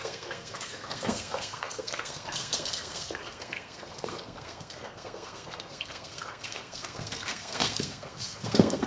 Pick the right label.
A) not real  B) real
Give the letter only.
A